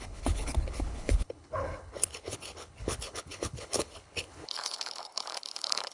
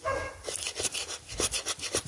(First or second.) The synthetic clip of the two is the first